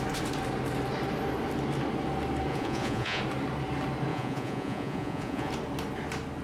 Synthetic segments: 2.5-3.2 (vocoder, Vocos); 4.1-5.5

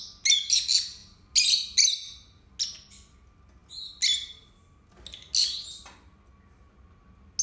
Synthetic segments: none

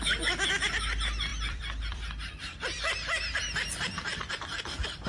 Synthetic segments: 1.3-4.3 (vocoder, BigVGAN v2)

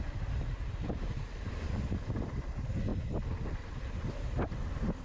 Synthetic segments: none

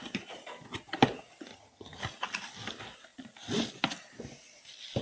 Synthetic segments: 1.5-2.0 (vocoder, HiFi-GAN)

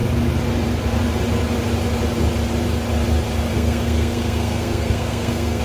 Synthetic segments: 3.5-5.6 (codec, SNAC)